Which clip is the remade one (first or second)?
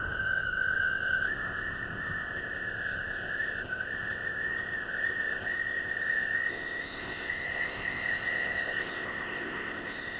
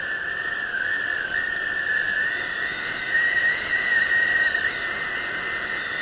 first